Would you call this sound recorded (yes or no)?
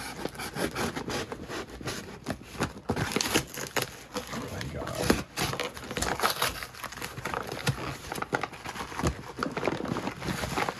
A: yes